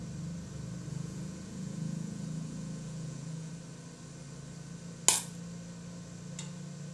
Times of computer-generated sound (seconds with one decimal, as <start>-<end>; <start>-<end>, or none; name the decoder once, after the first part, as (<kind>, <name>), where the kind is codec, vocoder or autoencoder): 0.9-3.5 (vocoder, Vocos)